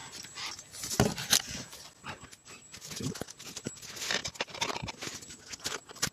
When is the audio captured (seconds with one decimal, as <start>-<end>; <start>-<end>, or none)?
0.0-6.1